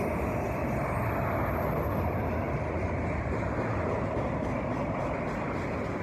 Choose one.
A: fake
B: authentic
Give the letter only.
B